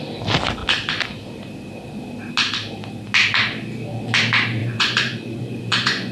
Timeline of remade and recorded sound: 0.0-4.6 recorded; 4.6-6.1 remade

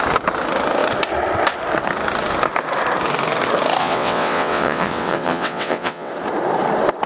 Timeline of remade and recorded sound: 0.0-3.8 recorded; 3.8-6.1 remade; 6.1-7.1 recorded

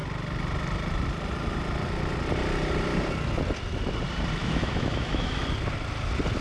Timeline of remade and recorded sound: 0.0-4.4 recorded; 4.4-5.4 remade; 5.4-6.4 recorded

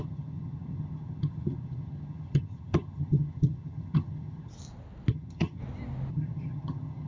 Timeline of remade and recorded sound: 0.0-4.5 remade; 4.5-5.1 recorded; 5.1-5.6 remade; 5.6-6.1 recorded; 6.1-7.1 remade

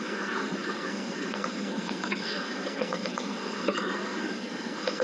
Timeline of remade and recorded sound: 0.0-5.0 remade

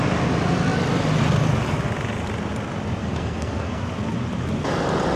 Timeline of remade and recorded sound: 0.0-3.0 recorded; 3.0-3.8 remade; 3.8-5.2 recorded